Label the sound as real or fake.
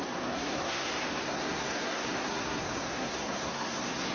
fake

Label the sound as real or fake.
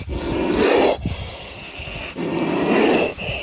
real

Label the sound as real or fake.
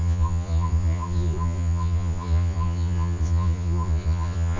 fake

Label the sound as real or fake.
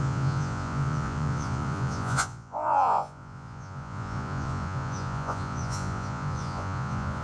fake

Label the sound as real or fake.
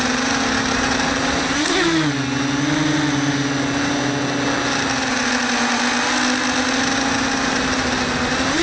real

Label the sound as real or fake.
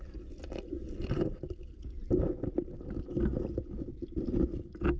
real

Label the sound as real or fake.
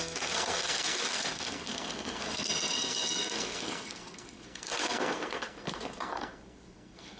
fake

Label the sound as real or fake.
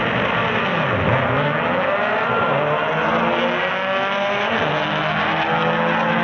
real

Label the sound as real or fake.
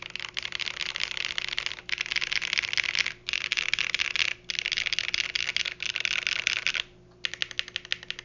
real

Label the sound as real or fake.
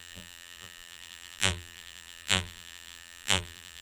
fake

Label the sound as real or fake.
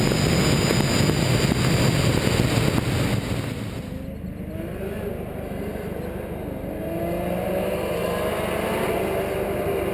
real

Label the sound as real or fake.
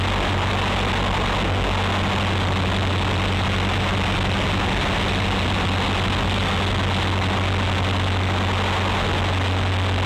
real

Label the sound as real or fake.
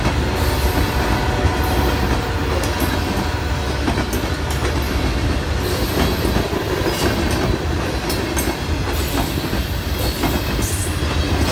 real